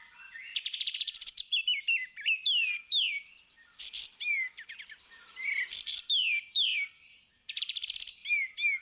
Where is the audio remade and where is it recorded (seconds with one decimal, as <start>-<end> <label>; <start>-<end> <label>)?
0.0-8.8 recorded